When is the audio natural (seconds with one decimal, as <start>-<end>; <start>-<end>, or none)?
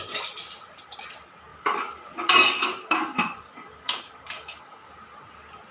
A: 0.0-1.5; 4.9-5.7